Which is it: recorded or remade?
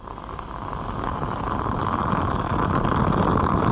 recorded